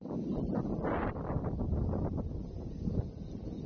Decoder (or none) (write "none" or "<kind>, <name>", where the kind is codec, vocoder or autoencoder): none